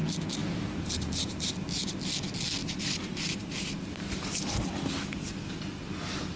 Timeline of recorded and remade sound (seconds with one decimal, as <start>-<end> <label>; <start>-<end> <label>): 0.0-0.4 recorded; 0.4-1.5 remade; 1.5-2.6 recorded; 2.6-4.6 remade; 4.6-6.4 recorded